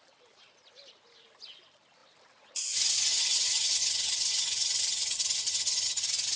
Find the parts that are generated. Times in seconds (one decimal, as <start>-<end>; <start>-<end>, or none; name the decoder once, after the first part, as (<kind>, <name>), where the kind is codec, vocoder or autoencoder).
3.1-6.0 (vocoder, HiFi-GAN)